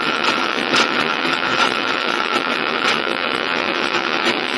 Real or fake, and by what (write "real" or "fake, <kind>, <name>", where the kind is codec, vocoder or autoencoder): fake, vocoder, WaveNeXt